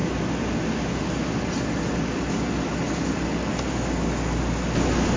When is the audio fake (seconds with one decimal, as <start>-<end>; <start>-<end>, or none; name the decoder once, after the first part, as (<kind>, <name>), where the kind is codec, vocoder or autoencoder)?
none